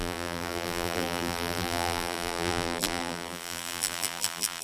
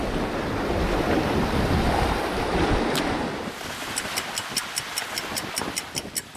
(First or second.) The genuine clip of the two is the second